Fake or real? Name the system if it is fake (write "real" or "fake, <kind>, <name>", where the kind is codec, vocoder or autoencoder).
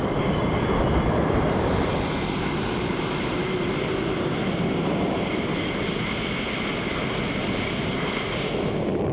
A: real